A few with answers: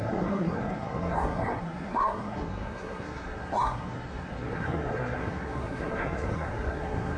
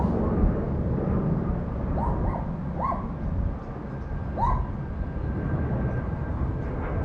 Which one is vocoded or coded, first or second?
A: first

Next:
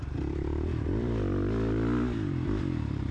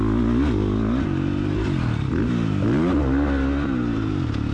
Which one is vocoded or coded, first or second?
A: first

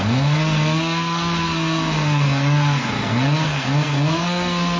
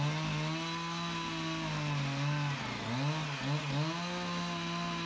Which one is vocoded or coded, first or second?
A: first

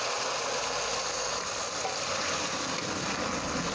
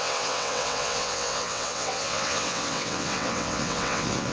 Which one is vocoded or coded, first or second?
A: second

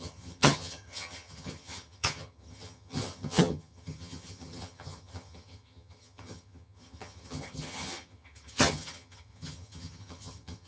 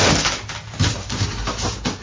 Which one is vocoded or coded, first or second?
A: first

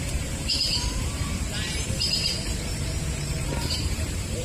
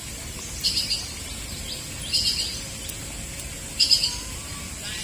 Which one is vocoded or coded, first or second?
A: first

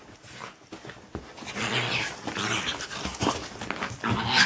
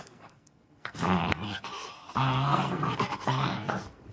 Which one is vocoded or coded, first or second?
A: second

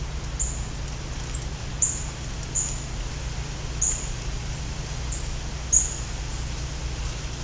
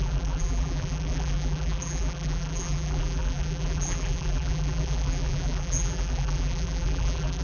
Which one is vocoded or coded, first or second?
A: second